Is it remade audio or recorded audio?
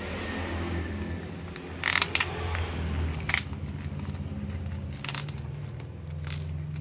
recorded